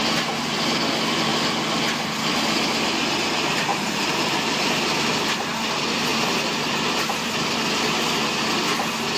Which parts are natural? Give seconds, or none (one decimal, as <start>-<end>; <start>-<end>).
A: 0.0-3.7; 4.7-9.2